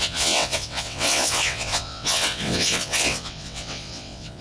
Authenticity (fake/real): fake